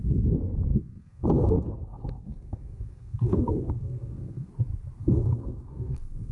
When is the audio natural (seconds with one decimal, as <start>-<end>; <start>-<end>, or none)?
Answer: 0.0-0.7; 4.5-5.0

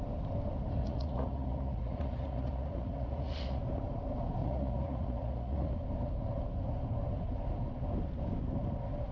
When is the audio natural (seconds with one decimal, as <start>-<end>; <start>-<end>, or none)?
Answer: 0.0-0.8; 3.6-4.4; 5.7-9.1

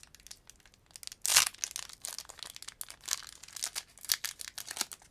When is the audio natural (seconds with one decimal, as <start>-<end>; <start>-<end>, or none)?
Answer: 0.0-5.1